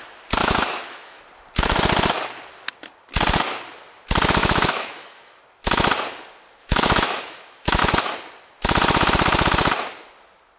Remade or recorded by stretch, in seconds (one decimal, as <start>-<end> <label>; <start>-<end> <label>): 0.0-0.4 recorded; 0.4-1.2 remade; 1.2-4.4 recorded; 4.4-5.4 remade; 5.4-6.6 recorded; 6.6-7.8 remade; 7.8-10.6 recorded